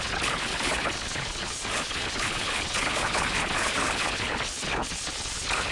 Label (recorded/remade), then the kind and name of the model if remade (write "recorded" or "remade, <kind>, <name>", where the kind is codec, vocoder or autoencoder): remade, codec, HILCodec